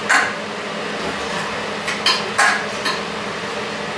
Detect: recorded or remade recorded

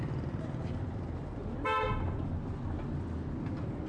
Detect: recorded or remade recorded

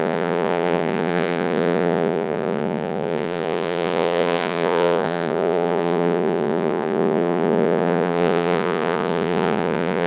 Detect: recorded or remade remade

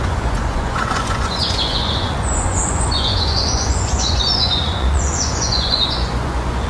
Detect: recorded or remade remade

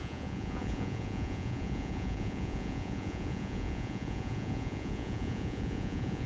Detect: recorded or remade remade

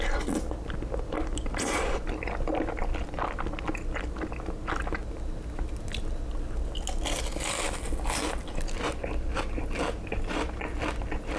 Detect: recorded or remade recorded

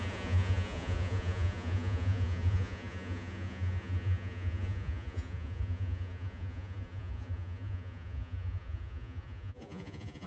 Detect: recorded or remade remade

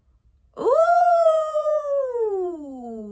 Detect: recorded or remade remade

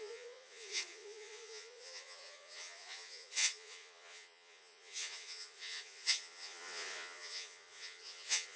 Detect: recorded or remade remade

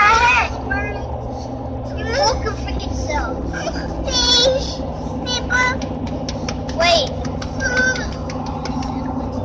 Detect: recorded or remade recorded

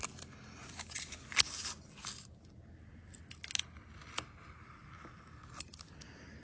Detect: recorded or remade recorded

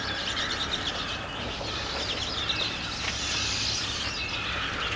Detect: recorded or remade recorded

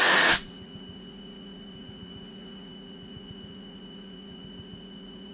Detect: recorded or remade remade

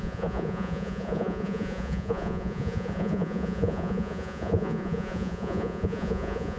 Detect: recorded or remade remade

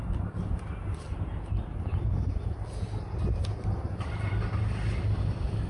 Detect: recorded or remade recorded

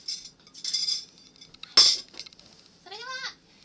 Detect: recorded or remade recorded